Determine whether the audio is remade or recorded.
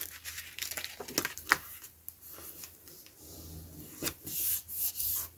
recorded